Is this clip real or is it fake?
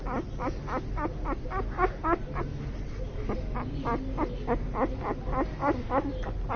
real